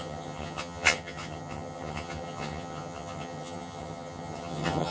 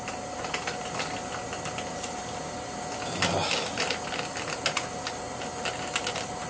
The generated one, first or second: first